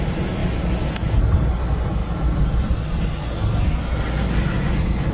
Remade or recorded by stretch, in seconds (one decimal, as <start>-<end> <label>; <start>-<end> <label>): 0.0-5.1 recorded